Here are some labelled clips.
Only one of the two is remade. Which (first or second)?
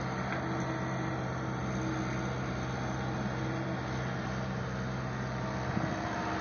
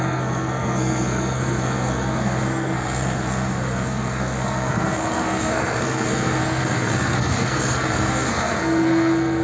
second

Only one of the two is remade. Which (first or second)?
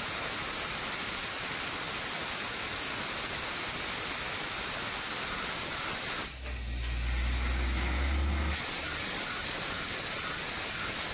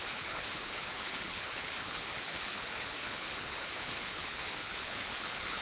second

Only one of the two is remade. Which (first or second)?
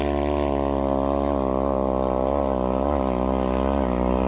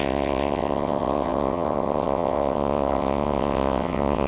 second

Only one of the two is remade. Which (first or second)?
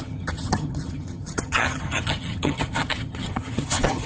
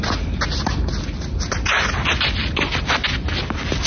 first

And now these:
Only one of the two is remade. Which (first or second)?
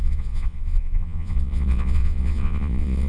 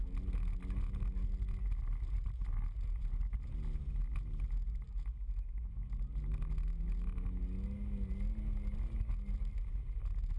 first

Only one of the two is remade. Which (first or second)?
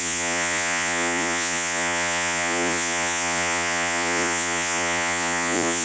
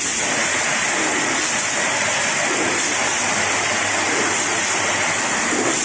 first